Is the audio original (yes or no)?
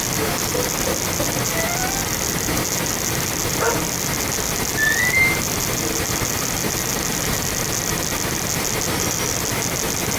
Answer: yes